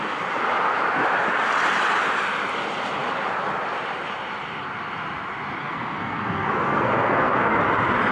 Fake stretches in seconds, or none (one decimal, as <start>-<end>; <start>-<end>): 5.6-7.6